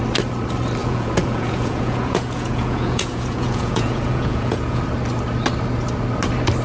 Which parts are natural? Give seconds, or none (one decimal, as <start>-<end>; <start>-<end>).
0.0-0.8; 4.8-6.6